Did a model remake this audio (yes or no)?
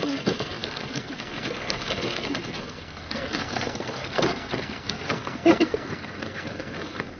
yes